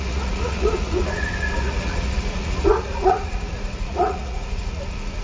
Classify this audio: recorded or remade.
remade